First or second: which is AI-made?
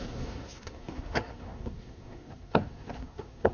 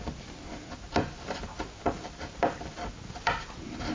first